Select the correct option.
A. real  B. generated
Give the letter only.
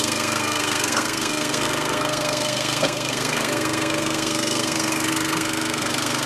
B